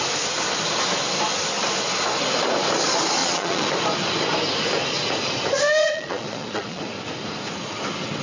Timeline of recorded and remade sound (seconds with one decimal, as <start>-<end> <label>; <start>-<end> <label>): 0.0-3.2 recorded; 3.2-3.7 remade; 3.7-5.8 recorded; 5.8-6.8 remade; 6.8-8.2 recorded